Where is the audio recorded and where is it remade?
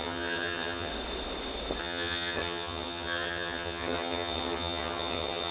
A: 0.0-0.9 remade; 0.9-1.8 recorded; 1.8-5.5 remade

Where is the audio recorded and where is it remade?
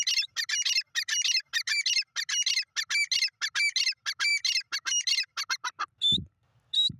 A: 0.0-7.0 recorded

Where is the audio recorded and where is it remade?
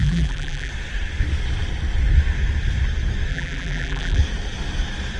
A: 0.0-0.7 remade; 0.7-3.3 recorded; 3.3-4.2 remade; 4.2-5.2 recorded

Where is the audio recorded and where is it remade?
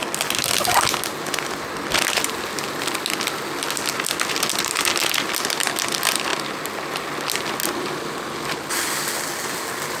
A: 0.0-10.0 recorded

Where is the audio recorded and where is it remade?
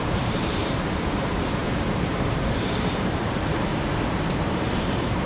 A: 0.0-0.6 remade; 0.6-1.2 recorded; 1.2-3.7 remade; 3.7-4.5 recorded; 4.5-5.3 remade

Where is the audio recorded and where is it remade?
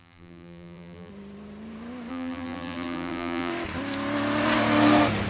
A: 0.0-1.1 remade; 1.1-2.1 recorded; 2.1-3.5 remade; 3.5-5.3 recorded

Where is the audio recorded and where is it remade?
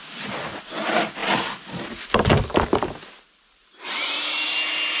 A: 0.0-5.0 recorded